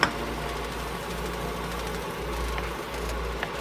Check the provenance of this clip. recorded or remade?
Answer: recorded